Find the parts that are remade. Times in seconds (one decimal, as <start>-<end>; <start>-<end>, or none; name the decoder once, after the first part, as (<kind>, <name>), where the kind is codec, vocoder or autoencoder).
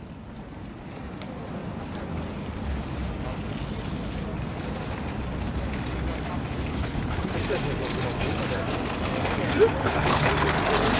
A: 6.7-7.4 (codec, HILCodec); 9.8-10.3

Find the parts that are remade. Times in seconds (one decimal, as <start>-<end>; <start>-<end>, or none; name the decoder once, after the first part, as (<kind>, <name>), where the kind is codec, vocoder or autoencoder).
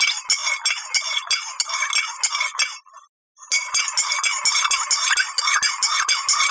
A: none